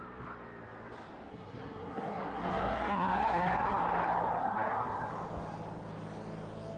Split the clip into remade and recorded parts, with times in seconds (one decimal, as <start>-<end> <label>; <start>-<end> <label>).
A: 0.0-1.3 recorded; 1.3-3.8 remade; 3.8-4.4 recorded; 4.4-5.1 remade; 5.1-6.8 recorded